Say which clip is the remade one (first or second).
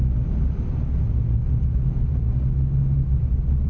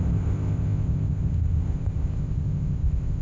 second